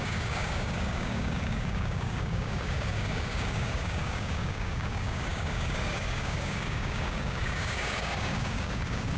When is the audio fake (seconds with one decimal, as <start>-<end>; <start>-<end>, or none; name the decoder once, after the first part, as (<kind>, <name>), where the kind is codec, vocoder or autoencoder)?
0.0-9.2 (codec, DAC)